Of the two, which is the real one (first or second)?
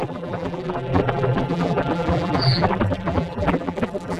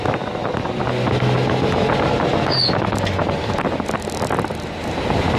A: second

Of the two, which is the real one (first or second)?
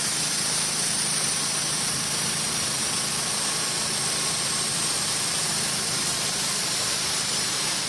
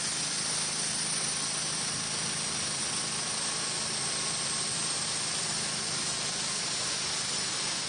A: second